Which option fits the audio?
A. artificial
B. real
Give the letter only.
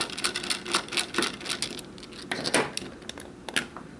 B